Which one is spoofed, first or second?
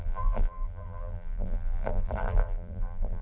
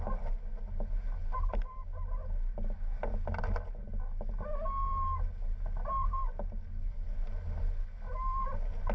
first